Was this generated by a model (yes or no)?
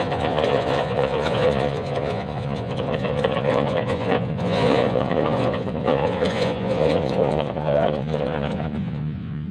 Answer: yes